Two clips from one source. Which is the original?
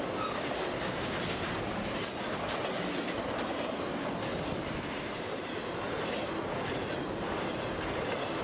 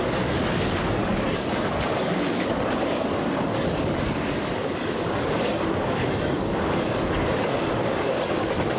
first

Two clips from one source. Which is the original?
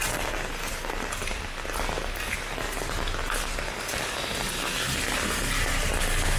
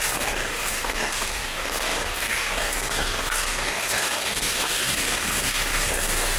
first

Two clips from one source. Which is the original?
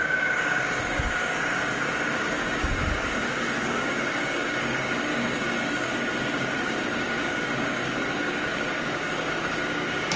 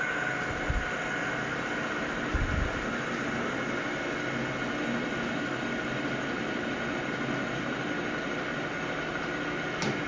second